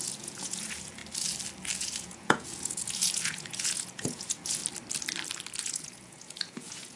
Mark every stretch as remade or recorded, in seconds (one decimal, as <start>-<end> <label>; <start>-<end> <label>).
0.0-1.0 remade; 1.0-1.8 recorded; 1.8-4.6 remade; 4.6-5.6 recorded; 5.6-7.0 remade